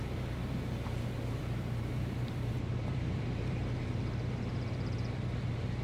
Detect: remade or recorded remade